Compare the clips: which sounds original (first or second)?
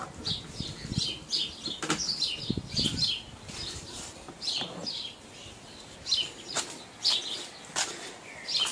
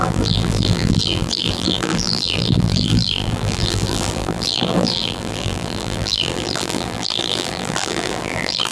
first